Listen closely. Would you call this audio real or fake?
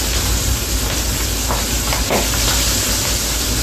real